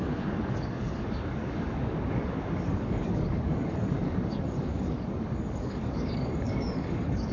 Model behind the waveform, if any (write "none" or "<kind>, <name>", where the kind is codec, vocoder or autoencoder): codec, DAC